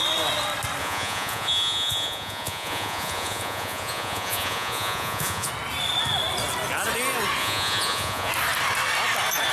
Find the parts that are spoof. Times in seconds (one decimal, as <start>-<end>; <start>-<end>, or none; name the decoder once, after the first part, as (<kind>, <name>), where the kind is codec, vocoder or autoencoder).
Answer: 0.8-5.5 (vocoder, Vocos); 7.4-8.3